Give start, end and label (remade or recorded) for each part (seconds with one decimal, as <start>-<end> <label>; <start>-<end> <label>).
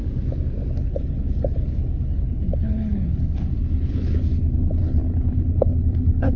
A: 0.0-0.7 recorded; 0.7-6.4 remade